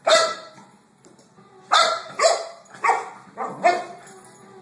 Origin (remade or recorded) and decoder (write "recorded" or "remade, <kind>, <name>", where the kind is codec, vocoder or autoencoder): recorded